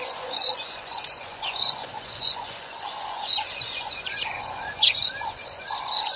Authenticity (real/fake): fake